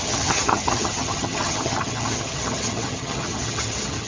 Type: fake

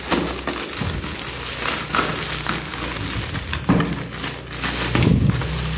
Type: real